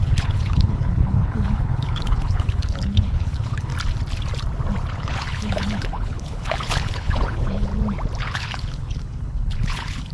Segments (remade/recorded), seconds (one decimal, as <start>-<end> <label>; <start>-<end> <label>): 0.0-3.7 remade; 3.7-4.9 recorded; 4.9-7.7 remade; 7.7-8.2 recorded; 8.2-10.1 remade